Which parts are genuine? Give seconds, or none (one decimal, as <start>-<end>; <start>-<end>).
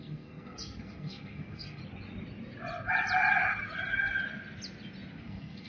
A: 1.8-5.2